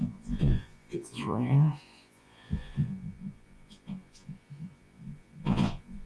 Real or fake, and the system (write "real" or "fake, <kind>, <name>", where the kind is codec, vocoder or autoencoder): fake, vocoder, Vocos